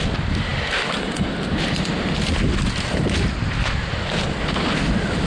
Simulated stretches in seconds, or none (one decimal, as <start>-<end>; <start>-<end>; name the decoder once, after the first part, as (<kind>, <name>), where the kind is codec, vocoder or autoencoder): none